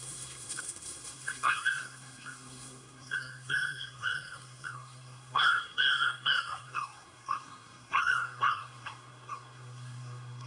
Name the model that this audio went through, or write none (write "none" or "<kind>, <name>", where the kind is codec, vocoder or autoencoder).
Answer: codec, SNAC